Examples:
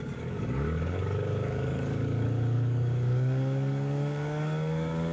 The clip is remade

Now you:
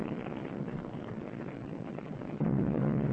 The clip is remade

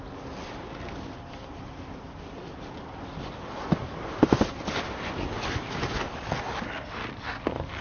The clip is recorded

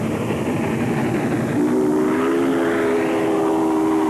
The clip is recorded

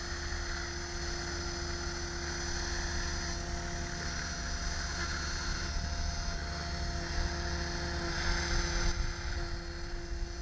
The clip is recorded